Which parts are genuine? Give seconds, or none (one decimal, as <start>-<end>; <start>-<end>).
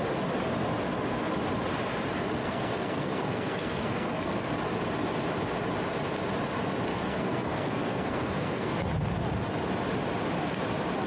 0.0-2.4; 4.5-6.9; 8.7-11.1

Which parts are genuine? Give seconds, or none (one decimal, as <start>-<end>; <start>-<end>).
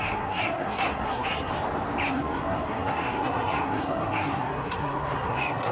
1.5-2.1